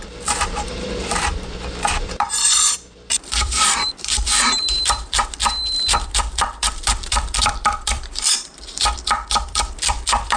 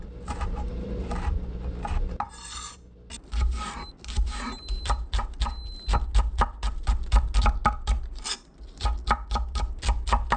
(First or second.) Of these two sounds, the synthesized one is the first